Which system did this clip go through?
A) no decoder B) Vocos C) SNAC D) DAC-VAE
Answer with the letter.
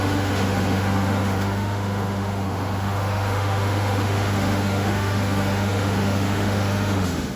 D